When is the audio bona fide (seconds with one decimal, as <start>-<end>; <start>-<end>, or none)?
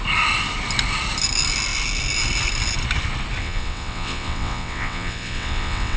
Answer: 0.0-3.4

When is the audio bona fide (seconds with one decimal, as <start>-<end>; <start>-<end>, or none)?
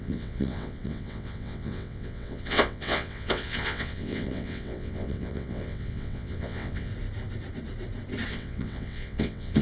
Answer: 6.9-8.3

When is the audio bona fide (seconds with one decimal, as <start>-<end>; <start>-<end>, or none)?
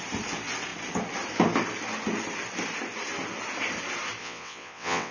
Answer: 0.0-4.2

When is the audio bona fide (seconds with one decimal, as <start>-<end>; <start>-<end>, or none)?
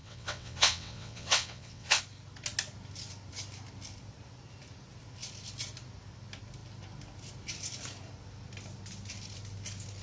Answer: 2.0-10.0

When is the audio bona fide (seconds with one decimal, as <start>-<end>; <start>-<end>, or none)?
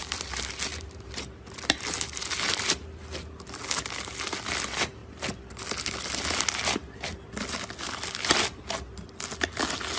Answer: 0.0-10.0